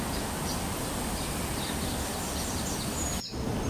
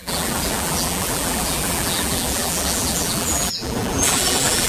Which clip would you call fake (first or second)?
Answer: second